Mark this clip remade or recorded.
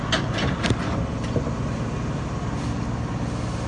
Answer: recorded